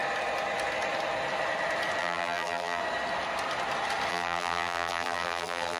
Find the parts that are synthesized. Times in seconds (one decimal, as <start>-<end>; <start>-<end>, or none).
2.0-2.8; 4.1-5.8